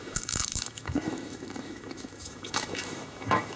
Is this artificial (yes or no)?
yes